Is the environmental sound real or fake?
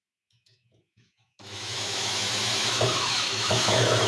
fake